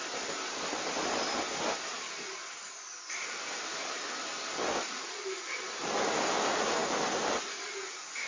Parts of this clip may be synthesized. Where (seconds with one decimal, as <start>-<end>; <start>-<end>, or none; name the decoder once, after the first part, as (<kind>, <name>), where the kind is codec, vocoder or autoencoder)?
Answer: 3.7-4.3 (autoencoder, DAC-VAE)